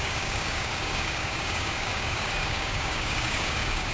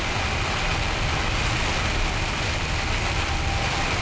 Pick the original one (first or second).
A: second